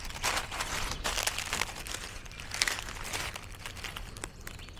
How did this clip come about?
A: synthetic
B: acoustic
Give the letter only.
B